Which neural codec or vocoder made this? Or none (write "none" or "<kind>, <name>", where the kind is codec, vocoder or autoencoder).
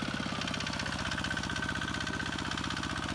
none